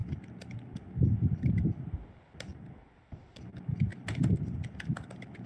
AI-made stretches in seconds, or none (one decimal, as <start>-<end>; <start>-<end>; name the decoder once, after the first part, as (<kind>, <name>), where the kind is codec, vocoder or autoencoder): 2.5-3.0 (vocoder, BigVGAN v2); 3.9-4.9

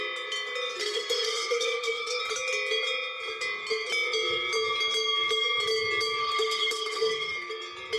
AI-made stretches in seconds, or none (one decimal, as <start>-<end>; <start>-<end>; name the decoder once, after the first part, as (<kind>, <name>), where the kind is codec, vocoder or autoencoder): 0.8-2.2 (codec, SNAC); 6.2-7.5

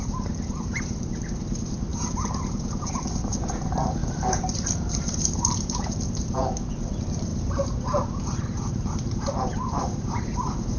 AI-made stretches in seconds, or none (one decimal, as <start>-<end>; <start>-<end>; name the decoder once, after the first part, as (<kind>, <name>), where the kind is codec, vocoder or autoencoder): 0.0-7.3 (vocoder, BigVGAN v2); 8.6-10.8

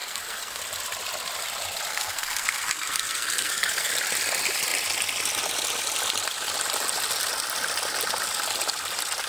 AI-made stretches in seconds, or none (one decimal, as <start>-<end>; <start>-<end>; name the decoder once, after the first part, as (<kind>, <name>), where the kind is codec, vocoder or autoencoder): 0.0-0.6 (codec, SNAC); 1.9-3.9

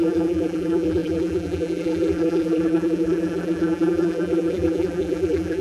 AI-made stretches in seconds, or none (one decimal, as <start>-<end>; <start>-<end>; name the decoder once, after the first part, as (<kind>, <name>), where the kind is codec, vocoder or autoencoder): 0.0-5.6 (vocoder, BigVGAN v2)